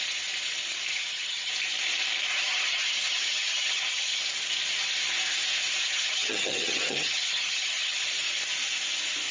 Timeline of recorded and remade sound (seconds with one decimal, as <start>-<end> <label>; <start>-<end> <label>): 0.0-0.9 recorded; 0.9-1.5 remade; 1.5-2.3 recorded; 2.3-4.2 remade; 4.2-5.8 recorded; 5.8-8.0 remade; 8.0-9.3 recorded